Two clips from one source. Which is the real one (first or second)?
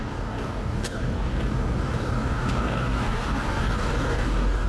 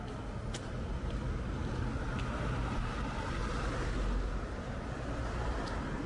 second